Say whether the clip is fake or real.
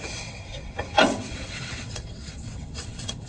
fake